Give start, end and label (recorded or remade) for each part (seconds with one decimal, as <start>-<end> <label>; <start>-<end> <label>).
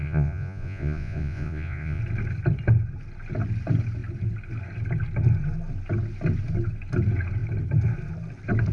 0.0-2.0 remade; 2.0-8.7 recorded